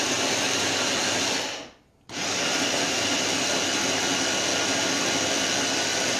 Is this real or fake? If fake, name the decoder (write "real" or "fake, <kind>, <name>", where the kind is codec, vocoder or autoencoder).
real